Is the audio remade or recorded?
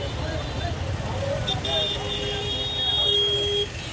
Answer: recorded